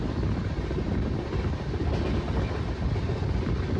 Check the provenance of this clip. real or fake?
real